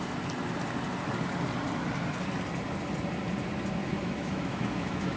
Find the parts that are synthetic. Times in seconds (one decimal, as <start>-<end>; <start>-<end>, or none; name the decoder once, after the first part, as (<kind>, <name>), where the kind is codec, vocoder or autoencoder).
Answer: 3.8-5.2 (autoencoder, DAC-VAE)